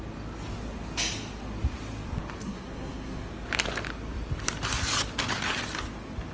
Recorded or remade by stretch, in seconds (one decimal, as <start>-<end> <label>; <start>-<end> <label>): 0.0-2.4 recorded; 2.4-3.3 remade; 3.3-6.3 recorded